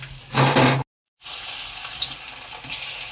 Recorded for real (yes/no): yes